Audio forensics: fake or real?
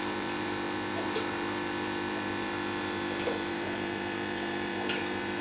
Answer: fake